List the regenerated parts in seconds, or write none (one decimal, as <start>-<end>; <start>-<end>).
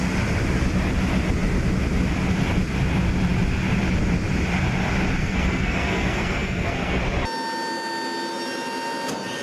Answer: 5.2-7.0